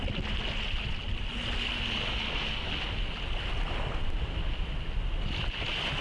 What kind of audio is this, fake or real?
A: real